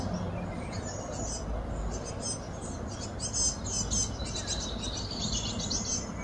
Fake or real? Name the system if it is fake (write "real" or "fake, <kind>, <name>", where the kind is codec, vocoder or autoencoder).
real